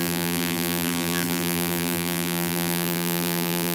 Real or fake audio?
fake